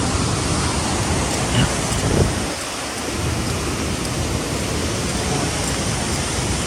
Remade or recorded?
recorded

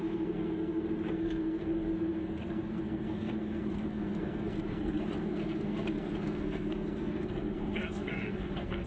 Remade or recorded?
remade